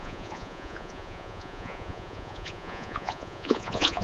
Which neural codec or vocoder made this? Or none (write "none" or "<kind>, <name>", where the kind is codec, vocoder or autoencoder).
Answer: vocoder, Vocos